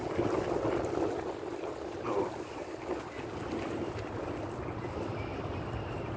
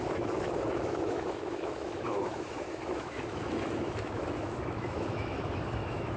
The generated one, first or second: second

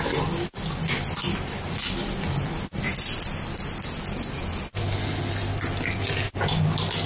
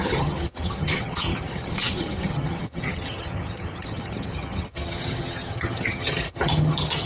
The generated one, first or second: second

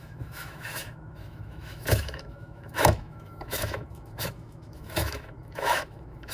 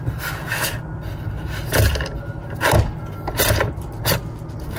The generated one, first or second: first